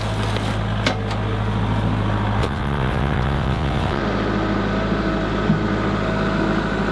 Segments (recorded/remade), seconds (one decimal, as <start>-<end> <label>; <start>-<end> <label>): 0.0-2.4 recorded; 2.4-4.0 remade; 4.0-6.9 recorded